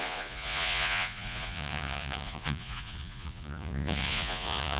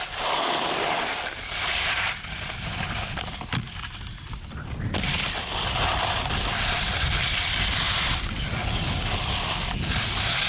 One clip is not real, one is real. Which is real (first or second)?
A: second